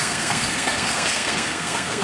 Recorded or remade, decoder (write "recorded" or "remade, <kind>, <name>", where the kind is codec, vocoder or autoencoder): remade, codec, SNAC